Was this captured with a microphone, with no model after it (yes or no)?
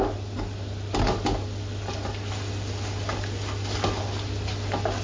yes